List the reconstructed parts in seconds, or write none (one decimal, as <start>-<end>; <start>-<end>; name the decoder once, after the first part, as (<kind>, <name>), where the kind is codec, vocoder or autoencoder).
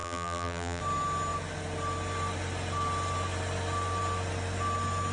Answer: 0.0-0.8 (vocoder, BigVGAN v2)